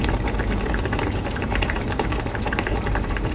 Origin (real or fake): fake